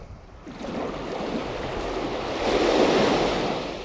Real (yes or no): yes